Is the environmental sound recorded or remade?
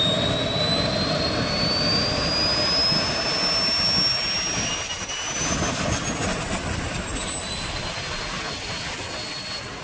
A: recorded